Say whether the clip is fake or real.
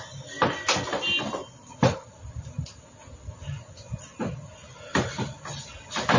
real